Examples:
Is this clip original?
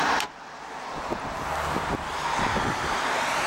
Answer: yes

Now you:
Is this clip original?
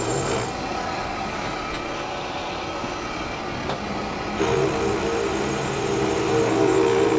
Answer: yes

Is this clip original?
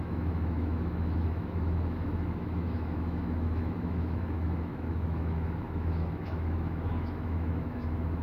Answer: no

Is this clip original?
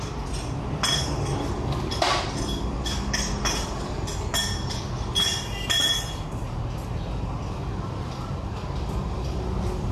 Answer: yes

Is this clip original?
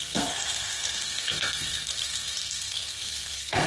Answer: no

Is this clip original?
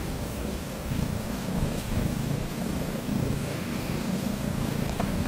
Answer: no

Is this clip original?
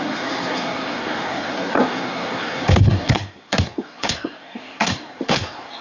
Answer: no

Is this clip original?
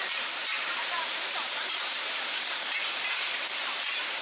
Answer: no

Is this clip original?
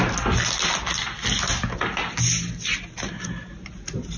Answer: yes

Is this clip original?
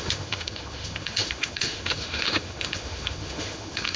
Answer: no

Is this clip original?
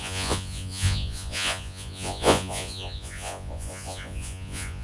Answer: no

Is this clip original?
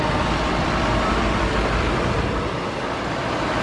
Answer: no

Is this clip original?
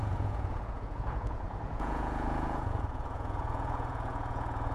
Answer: no